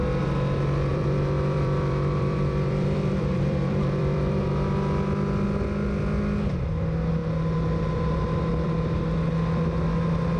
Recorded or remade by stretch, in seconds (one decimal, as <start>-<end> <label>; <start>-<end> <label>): 0.0-0.9 recorded; 0.9-4.4 remade; 4.4-10.4 recorded